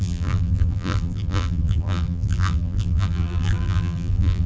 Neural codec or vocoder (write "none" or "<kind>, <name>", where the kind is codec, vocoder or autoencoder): vocoder, BigVGAN v2